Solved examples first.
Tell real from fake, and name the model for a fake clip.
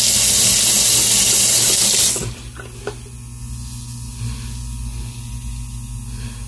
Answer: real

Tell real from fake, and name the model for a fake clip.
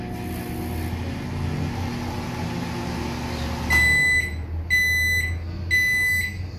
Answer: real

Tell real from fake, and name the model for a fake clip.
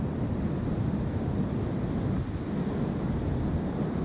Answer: real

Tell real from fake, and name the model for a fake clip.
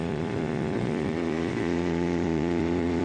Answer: fake, vocoder, Vocos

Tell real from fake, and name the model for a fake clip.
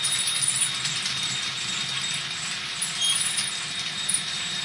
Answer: fake, vocoder, BigVGAN v2